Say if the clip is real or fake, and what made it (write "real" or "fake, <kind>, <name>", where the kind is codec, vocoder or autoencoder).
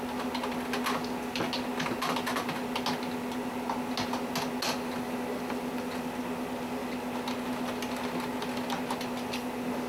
real